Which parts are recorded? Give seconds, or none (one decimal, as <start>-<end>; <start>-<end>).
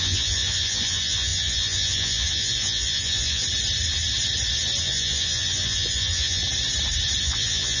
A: 3.4-4.8; 6.4-7.2